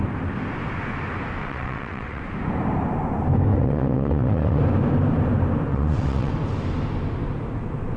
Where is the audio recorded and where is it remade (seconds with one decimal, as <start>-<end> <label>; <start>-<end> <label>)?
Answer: 0.0-1.4 recorded; 1.4-2.2 remade; 2.2-3.5 recorded; 3.5-4.6 remade; 4.6-5.7 recorded; 5.7-6.3 remade; 6.3-8.0 recorded

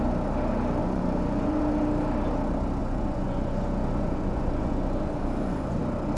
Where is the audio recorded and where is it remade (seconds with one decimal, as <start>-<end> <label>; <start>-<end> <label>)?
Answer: 0.0-0.8 recorded; 0.8-1.6 remade; 1.6-2.8 recorded; 2.8-5.8 remade; 5.8-6.2 recorded

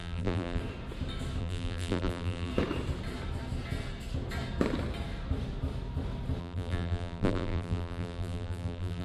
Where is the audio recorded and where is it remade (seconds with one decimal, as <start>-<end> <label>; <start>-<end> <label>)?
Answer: 0.0-0.6 remade; 0.6-1.4 recorded; 1.4-2.5 remade; 2.5-6.4 recorded; 6.4-9.0 remade